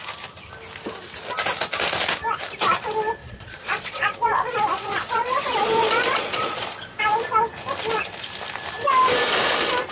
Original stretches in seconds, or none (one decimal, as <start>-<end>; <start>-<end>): 0.0-3.2; 7.0-9.9